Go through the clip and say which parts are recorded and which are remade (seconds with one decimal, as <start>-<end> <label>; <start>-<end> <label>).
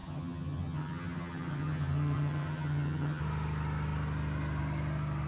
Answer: 0.0-3.2 remade; 3.2-5.3 recorded